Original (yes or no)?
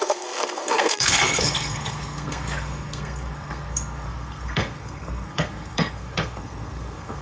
no